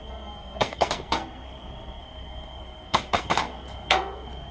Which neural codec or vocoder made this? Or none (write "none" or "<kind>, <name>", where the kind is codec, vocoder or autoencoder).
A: codec, SNAC